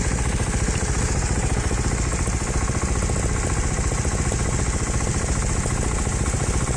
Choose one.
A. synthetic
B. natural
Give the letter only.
B